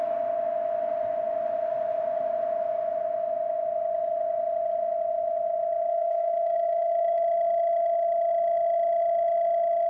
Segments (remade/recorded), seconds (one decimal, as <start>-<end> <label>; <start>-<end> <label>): 0.0-5.9 recorded; 5.9-7.2 remade; 7.2-9.9 recorded